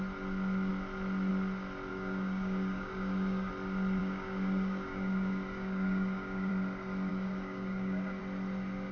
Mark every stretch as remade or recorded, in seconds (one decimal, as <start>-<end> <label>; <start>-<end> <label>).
0.0-1.9 recorded; 1.9-3.5 remade; 3.5-4.0 recorded; 4.0-6.5 remade; 6.5-7.1 recorded; 7.1-8.2 remade; 8.2-8.9 recorded